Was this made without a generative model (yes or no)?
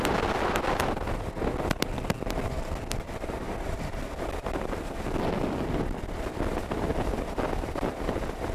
yes